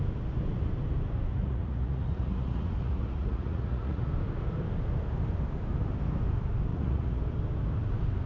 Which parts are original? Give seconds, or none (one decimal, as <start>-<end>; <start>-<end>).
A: 0.0-1.3; 4.1-6.7; 7.2-8.3